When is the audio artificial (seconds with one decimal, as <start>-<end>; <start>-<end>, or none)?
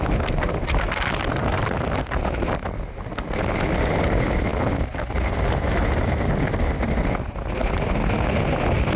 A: none